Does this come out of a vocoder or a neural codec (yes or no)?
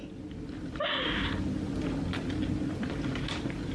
no